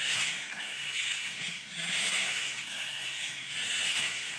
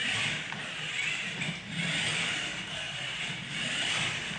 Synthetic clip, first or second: first